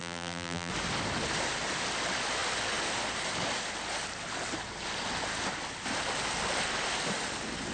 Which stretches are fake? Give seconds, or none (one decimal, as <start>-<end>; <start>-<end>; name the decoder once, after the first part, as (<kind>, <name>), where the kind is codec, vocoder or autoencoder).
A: 0.0-0.7 (vocoder, BigVGAN v2)